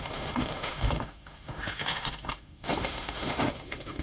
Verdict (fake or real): fake